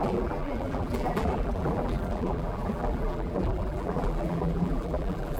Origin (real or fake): fake